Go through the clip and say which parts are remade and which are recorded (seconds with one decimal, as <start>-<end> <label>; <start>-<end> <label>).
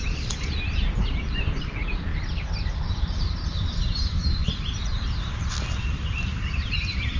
0.0-2.1 remade; 2.1-2.9 recorded; 2.9-4.4 remade; 4.4-5.9 recorded; 5.9-7.2 remade